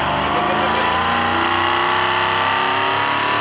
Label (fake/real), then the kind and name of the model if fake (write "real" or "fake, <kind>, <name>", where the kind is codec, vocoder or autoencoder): real